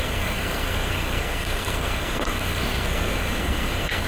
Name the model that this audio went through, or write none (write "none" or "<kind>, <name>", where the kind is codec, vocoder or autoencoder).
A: codec, SNAC